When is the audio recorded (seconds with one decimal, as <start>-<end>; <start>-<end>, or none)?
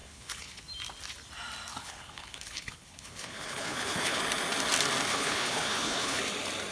0.6-1.7; 4.2-5.1; 6.2-6.7